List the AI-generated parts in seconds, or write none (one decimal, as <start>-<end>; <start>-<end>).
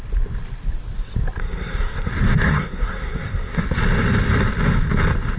1.4-2.1; 2.5-3.6